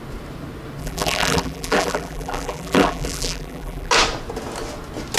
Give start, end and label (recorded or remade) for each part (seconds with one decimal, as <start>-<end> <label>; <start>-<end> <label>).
0.0-0.8 recorded; 0.8-3.9 remade; 3.9-5.2 recorded

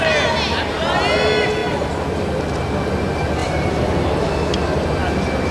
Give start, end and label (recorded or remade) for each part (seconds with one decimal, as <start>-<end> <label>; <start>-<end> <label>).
0.0-3.4 recorded; 3.4-4.1 remade; 4.1-5.5 recorded

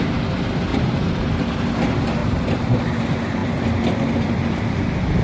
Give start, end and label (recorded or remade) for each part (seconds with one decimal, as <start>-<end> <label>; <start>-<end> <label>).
0.0-0.7 recorded; 0.7-1.4 remade; 1.4-2.2 recorded; 2.2-2.8 remade; 2.8-5.2 recorded

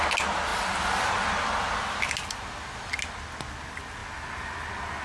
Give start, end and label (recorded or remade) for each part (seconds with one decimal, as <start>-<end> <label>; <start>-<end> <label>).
0.0-5.0 recorded

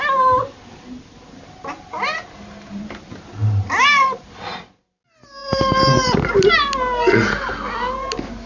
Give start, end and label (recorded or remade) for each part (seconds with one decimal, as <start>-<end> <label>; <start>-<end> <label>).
0.0-3.4 recorded; 3.4-4.2 remade; 4.2-5.4 recorded; 5.4-6.5 remade; 6.5-8.5 recorded

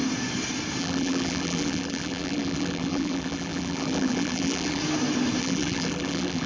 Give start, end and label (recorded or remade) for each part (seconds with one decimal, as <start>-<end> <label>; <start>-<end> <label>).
0.0-0.8 recorded; 0.8-4.8 remade; 4.8-5.4 recorded; 5.4-6.5 remade

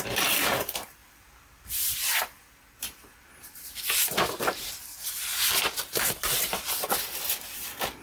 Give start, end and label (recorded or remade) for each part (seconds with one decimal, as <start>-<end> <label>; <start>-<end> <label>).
0.0-8.0 remade